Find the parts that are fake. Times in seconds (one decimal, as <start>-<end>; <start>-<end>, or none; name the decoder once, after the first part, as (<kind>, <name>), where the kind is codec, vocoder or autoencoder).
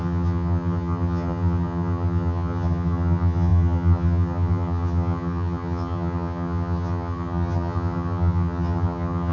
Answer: 0.0-9.3 (vocoder, HiFi-GAN)